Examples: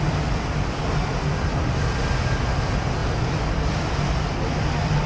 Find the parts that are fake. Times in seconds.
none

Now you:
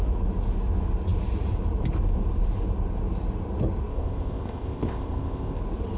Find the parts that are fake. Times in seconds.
3.9-5.6 (codec, ZipCodec)